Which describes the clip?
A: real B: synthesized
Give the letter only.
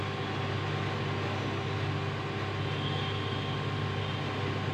A